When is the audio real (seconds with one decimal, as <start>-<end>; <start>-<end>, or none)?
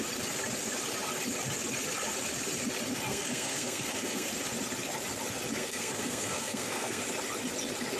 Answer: 0.0-3.1; 4.3-5.6; 7.0-8.0